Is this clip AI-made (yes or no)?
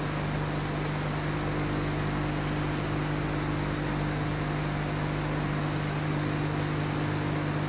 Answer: no